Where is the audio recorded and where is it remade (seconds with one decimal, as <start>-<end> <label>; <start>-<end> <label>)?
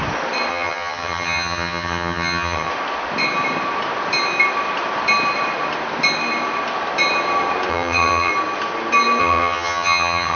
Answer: 0.0-0.5 recorded; 0.5-2.7 remade; 2.7-7.7 recorded; 7.7-8.3 remade; 8.3-9.2 recorded; 9.2-10.4 remade